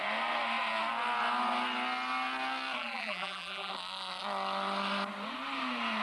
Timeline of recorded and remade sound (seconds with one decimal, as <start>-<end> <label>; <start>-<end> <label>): 0.0-2.8 recorded; 2.8-3.7 remade; 3.7-6.0 recorded